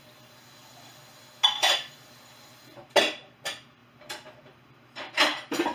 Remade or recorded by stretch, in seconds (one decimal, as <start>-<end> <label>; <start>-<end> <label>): 0.0-5.7 recorded